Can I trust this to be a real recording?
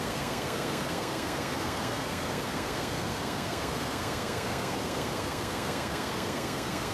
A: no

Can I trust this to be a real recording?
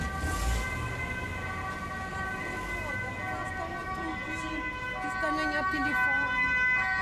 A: yes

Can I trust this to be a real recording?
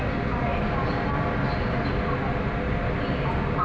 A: yes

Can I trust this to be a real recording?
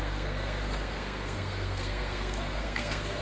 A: no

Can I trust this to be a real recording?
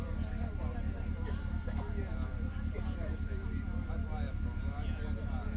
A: yes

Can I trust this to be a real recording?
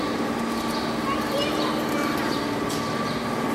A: yes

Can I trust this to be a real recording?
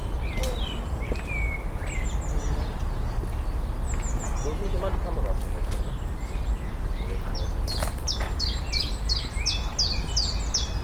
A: yes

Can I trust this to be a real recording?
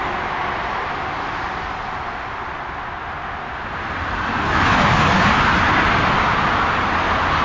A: yes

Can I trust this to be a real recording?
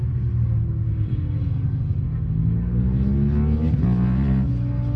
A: yes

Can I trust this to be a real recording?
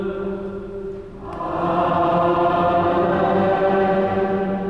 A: yes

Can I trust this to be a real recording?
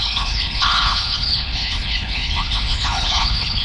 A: no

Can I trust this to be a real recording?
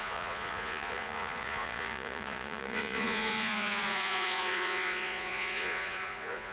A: no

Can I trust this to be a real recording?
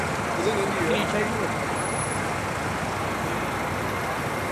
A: yes